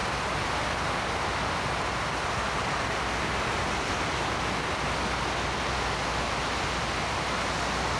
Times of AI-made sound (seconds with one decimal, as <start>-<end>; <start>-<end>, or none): none